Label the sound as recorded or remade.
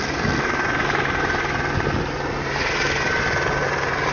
recorded